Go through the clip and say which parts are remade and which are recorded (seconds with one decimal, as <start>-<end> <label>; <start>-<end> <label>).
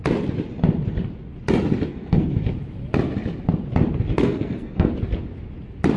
0.0-1.9 recorded; 1.9-2.5 remade; 2.5-4.1 recorded; 4.1-4.9 remade; 4.9-6.0 recorded